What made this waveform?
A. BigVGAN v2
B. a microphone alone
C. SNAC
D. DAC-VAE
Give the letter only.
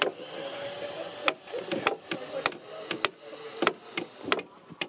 B